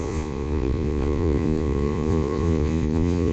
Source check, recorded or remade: remade